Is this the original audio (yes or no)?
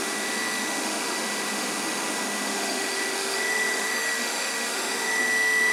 no